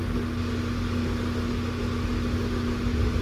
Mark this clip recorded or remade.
recorded